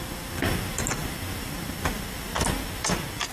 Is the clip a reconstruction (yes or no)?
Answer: yes